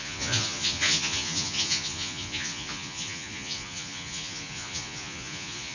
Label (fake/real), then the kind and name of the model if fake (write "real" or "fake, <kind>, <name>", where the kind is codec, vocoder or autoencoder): fake, vocoder, Vocos